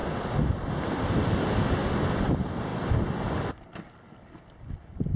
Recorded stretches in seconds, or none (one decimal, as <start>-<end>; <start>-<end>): 0.0-5.2